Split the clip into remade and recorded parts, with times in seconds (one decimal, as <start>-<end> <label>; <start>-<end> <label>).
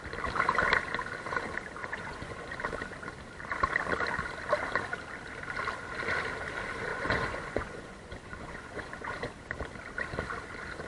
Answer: 0.0-1.8 recorded; 1.8-2.5 remade; 2.5-6.9 recorded; 6.9-9.3 remade; 9.3-10.9 recorded